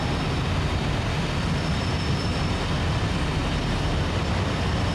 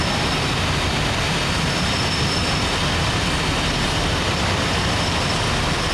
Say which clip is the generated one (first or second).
second